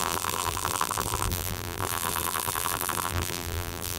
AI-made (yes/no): yes